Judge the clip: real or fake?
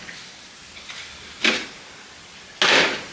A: real